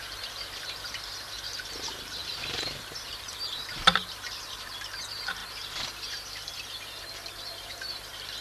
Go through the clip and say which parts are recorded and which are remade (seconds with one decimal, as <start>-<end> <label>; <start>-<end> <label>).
0.0-5.4 remade; 5.4-7.3 recorded; 7.3-8.4 remade